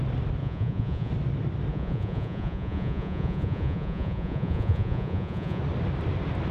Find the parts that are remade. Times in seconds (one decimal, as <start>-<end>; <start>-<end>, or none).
0.4-1.1; 1.7-5.6